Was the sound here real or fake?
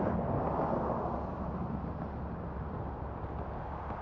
real